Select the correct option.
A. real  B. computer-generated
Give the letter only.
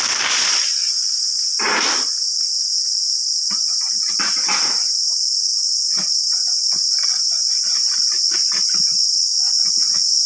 A